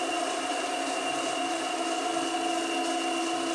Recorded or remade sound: recorded